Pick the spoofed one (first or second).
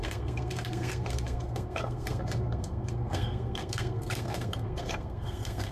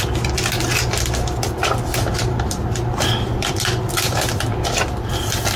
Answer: first